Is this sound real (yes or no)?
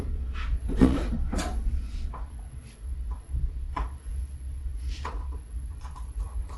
no